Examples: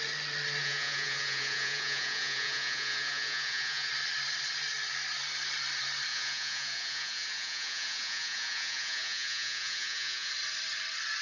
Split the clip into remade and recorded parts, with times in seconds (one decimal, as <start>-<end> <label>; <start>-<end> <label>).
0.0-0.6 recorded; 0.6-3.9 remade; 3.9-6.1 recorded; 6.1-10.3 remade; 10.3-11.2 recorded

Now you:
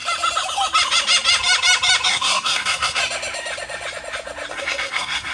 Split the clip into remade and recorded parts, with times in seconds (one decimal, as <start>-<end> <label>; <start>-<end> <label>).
0.0-2.1 recorded; 2.1-3.0 remade; 3.0-4.5 recorded; 4.5-5.3 remade

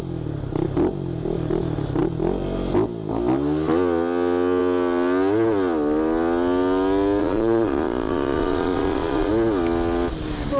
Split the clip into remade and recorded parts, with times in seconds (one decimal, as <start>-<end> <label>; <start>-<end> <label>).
0.0-7.2 recorded; 7.2-9.3 remade; 9.3-10.6 recorded